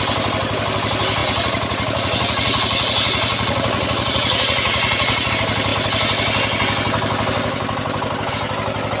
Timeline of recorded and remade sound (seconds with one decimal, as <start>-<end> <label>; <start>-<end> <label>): 0.0-1.2 recorded; 1.2-5.3 remade; 5.3-9.0 recorded